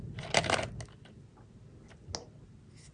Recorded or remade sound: recorded